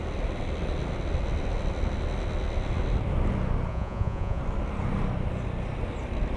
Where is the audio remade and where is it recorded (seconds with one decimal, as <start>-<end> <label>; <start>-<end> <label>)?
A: 0.0-3.7 recorded; 3.7-4.4 remade; 4.4-6.4 recorded